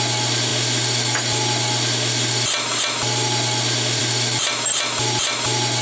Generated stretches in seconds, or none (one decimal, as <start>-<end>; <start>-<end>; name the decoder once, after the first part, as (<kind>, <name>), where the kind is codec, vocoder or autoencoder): none